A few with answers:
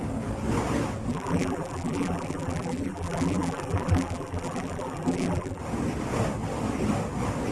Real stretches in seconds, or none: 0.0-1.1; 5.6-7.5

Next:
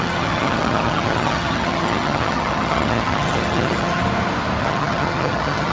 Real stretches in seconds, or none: 4.0-4.6

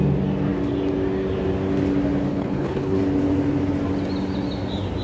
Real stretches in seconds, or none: 0.0-2.3; 3.0-5.0

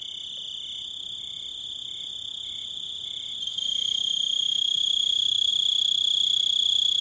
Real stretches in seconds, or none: 0.0-3.5; 5.5-7.0

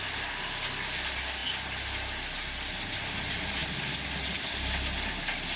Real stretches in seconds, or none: 0.0-5.6

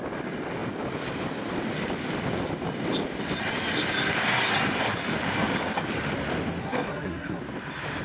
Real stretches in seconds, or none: 0.0-6.6; 7.4-8.0

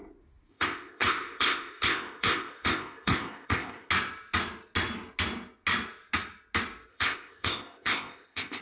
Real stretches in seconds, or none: 0.0-0.5; 3.9-6.9